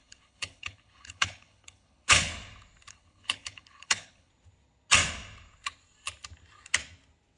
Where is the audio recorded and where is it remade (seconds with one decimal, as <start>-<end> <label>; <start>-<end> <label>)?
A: 0.0-2.3 remade; 2.3-2.9 recorded; 2.9-4.3 remade; 4.3-7.4 recorded